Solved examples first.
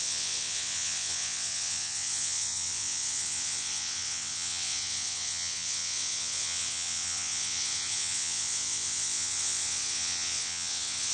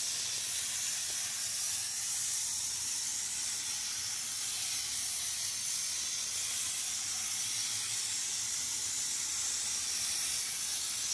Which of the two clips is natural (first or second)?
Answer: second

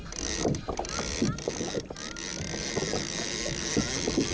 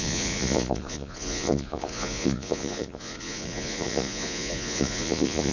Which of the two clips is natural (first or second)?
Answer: first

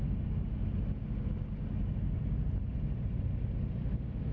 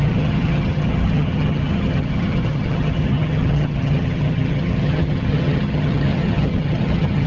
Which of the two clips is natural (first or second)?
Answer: first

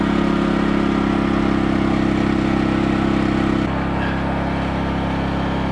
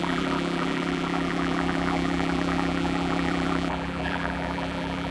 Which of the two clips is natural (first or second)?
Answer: first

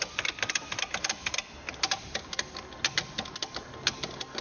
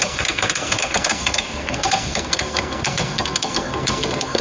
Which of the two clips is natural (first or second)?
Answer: first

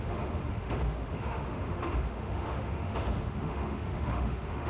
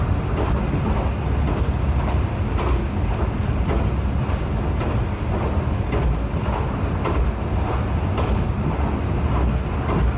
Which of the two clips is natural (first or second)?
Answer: second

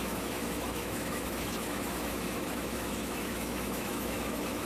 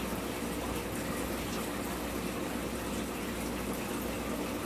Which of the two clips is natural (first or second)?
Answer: second